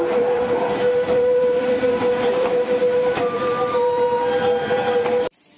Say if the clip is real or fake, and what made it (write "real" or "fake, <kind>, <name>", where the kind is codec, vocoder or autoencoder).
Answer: fake, vocoder, BigVGAN v2